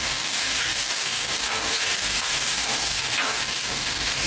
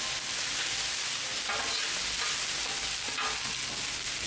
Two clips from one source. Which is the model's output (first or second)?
first